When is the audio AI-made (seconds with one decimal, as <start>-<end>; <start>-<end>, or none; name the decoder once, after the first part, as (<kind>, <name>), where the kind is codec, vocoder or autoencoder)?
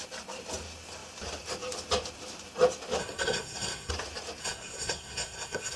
3.0-3.9 (codec, SNAC); 4.4-5.8